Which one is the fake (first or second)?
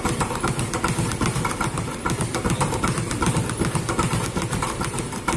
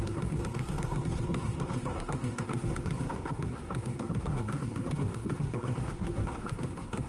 second